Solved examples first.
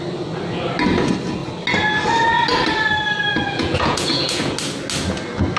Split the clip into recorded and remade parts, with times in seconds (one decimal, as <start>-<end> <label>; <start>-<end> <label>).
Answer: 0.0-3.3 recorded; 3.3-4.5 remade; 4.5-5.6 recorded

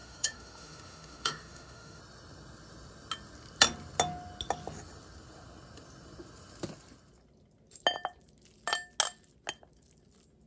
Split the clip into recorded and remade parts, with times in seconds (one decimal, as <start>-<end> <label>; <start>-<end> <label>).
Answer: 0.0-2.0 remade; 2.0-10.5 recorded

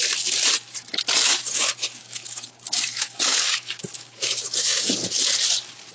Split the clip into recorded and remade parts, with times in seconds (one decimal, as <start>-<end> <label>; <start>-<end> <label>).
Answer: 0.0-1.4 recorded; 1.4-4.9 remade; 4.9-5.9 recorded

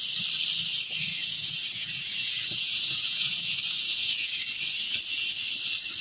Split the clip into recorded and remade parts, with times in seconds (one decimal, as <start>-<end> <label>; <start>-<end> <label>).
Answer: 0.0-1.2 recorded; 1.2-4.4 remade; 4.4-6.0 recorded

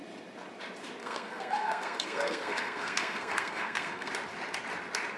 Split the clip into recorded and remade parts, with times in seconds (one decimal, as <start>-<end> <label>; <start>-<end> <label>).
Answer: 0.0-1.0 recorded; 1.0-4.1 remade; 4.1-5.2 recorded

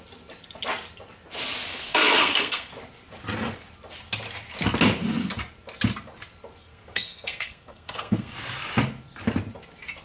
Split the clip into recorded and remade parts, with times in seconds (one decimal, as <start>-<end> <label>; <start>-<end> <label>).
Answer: 0.0-1.7 recorded; 1.7-2.7 remade; 2.7-6.6 recorded; 6.6-8.3 remade; 8.3-10.0 recorded